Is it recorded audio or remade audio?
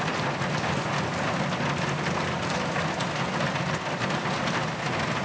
recorded